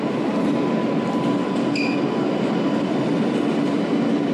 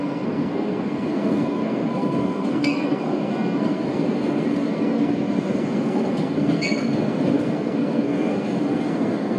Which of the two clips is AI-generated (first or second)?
second